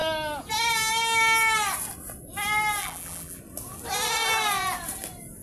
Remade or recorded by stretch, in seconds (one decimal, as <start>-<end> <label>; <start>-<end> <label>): 0.0-2.8 recorded; 2.8-3.4 remade; 3.4-5.4 recorded